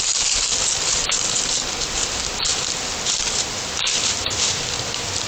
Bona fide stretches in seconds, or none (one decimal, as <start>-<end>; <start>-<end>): 0.0-5.3